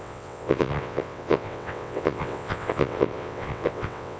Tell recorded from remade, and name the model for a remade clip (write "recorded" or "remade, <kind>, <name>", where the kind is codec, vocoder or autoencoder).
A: remade, vocoder, WaveNeXt